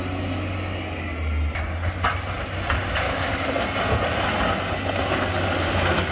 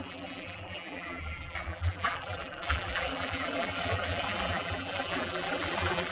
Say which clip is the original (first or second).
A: first